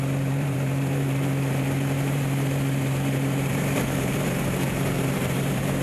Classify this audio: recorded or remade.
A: remade